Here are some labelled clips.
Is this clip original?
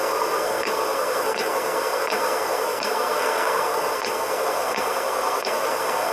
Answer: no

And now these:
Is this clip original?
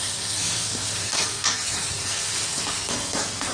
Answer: no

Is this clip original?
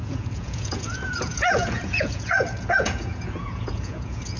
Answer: no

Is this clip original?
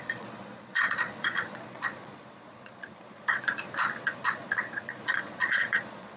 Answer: no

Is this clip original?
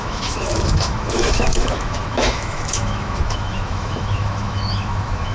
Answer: no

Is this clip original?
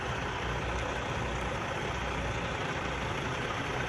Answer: yes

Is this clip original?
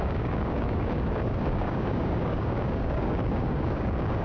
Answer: no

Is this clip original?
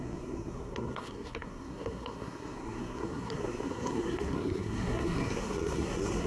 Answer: no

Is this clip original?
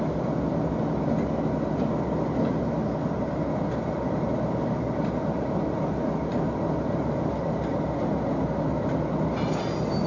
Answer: yes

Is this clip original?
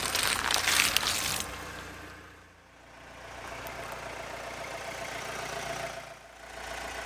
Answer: yes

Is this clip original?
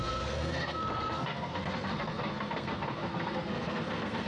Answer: no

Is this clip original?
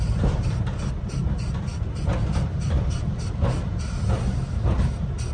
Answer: yes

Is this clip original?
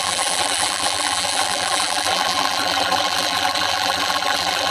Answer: no